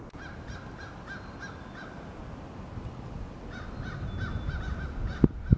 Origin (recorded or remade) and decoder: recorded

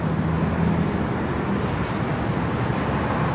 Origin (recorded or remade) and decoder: recorded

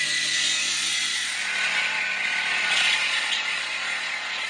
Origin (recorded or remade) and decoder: remade, vocoder, Vocos